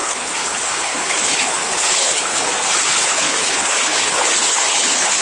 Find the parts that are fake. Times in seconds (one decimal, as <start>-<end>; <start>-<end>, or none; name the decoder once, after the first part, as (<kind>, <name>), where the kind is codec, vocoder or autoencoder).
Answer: 0.0-2.5 (codec, HILCodec); 2.9-5.2